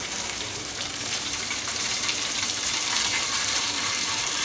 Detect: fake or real fake